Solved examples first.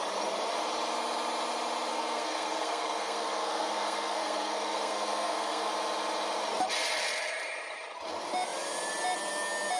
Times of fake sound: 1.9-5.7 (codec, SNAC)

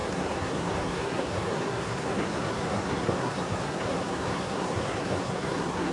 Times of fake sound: 0.0-5.9 (codec, SNAC)